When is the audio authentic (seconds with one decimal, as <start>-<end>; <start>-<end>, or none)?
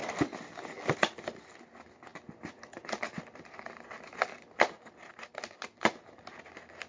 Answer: 0.0-6.9